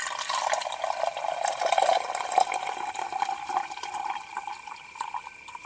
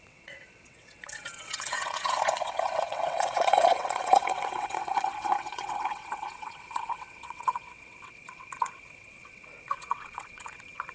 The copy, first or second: second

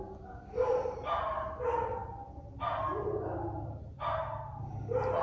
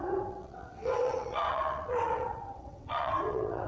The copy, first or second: second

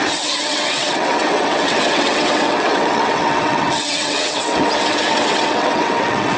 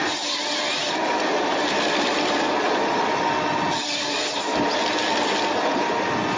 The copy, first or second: first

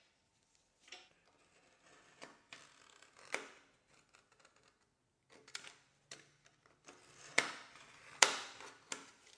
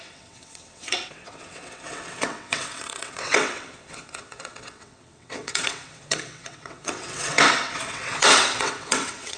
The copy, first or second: second